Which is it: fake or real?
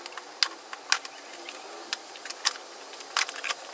real